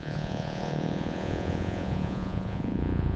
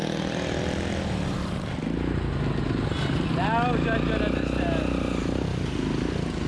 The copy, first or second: first